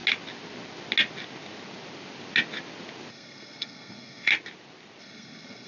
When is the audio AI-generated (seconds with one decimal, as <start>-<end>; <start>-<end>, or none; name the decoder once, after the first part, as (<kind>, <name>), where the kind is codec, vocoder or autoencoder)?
3.1-4.3 (codec, SNAC); 5.0-5.7